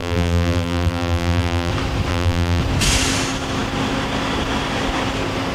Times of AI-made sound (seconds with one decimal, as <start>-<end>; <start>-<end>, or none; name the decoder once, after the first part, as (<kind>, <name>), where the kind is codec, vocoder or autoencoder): 0.0-1.7 (vocoder, BigVGAN v2); 2.1-2.6